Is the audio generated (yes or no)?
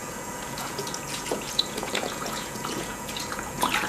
yes